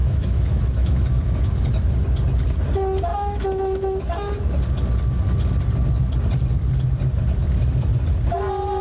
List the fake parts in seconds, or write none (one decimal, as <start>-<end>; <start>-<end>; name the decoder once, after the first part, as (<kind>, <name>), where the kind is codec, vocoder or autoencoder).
0.0-1.5 (autoencoder, DAC-VAE); 3.1-4.0